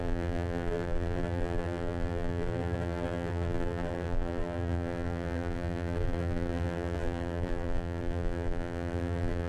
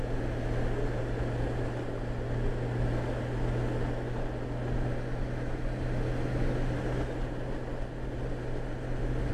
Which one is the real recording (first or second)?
second